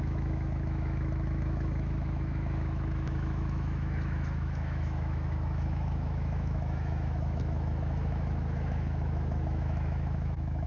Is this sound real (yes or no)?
no